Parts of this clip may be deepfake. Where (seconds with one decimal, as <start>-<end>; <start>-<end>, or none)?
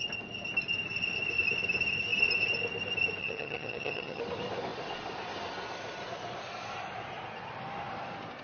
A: 3.2-4.2